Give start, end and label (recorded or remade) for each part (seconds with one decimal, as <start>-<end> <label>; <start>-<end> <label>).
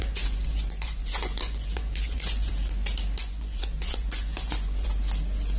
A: 0.0-2.5 remade; 2.5-3.2 recorded; 3.2-4.9 remade; 4.9-5.6 recorded